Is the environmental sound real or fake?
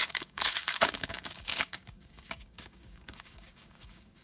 fake